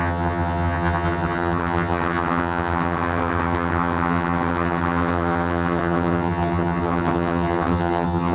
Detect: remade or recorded remade